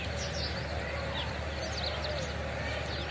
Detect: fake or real real